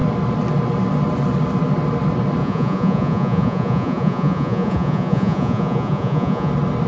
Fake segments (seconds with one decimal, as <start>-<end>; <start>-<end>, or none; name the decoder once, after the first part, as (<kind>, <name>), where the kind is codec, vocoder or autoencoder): 2.4-6.5 (vocoder, Vocos)